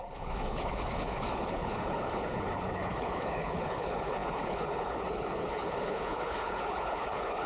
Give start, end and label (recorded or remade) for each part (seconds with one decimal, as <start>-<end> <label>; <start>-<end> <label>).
0.0-7.5 remade